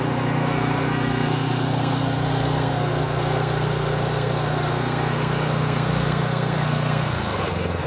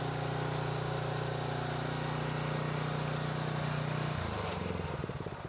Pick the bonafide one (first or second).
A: second